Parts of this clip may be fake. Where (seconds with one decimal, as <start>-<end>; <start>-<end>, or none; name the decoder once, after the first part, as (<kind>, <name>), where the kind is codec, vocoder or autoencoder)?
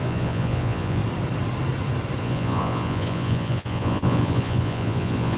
0.0-1.0 (vocoder, Vocos); 2.2-5.4